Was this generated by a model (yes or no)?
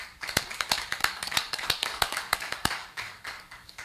yes